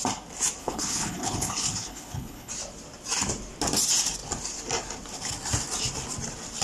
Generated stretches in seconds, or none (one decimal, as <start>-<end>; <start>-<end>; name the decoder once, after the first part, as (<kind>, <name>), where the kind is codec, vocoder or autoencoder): 0.6-2.5 (codec, HILCodec)